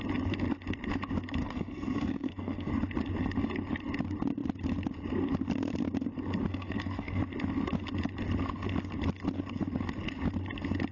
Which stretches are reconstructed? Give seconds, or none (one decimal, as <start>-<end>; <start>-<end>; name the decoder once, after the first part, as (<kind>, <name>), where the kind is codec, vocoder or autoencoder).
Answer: 1.4-2.7 (codec, SNAC); 6.5-7.2